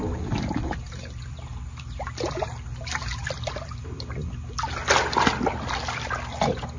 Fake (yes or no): no